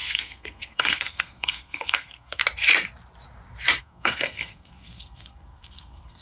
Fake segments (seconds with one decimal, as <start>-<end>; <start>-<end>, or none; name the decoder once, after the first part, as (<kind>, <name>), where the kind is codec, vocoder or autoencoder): 0.0-2.4 (codec, SNAC); 3.8-6.2